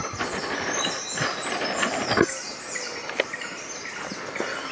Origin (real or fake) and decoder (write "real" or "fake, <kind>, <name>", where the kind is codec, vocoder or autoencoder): real